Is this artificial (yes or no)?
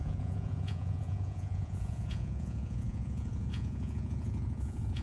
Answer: yes